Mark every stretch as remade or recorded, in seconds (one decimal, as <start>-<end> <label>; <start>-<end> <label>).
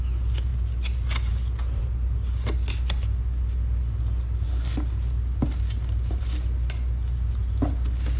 0.0-8.2 recorded